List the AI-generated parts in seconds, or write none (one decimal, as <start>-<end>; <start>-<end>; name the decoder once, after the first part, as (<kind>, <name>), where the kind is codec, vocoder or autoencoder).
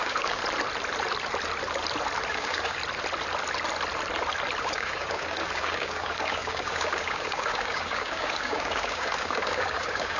0.0-0.4 (codec, DAC); 2.3-2.8; 4.6-10.2